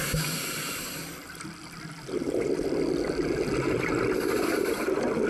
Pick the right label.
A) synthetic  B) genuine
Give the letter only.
B